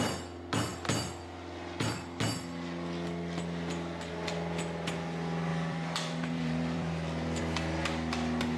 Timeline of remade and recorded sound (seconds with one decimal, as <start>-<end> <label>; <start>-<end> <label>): 0.0-5.5 recorded; 5.5-7.4 remade; 7.4-8.6 recorded

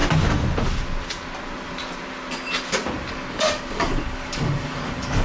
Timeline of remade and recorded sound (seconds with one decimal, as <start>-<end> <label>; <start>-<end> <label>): 0.0-3.1 recorded; 3.1-5.2 remade